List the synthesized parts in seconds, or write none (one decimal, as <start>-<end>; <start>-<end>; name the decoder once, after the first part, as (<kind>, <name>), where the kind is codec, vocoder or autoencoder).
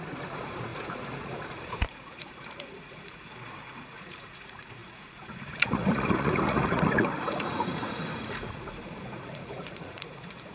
0.0-10.5 (vocoder, Vocos)